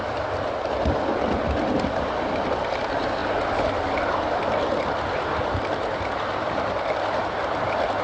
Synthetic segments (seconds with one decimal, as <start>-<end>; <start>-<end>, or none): none